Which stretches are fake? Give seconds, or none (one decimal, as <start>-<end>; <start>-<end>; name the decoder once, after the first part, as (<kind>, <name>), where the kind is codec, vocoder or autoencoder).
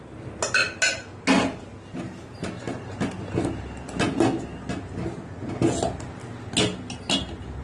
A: none